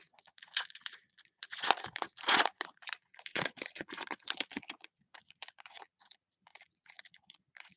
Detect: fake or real fake